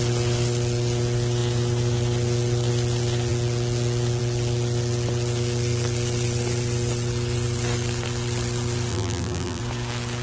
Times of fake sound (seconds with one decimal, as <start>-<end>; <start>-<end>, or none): 8.9-9.6